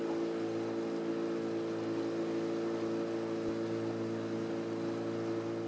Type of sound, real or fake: real